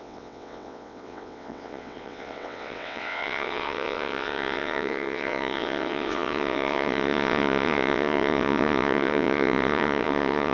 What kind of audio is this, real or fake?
fake